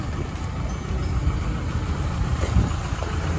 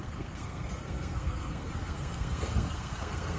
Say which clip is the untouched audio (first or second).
first